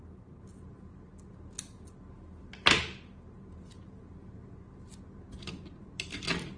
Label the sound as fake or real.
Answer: real